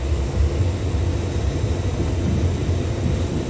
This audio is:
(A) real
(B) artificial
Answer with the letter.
A